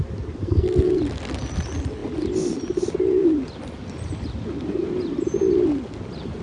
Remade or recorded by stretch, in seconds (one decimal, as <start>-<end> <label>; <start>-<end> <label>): 0.0-0.4 recorded; 0.4-1.0 remade; 1.0-6.4 recorded